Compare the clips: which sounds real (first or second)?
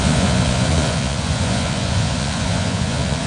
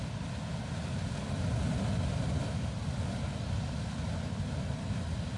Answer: second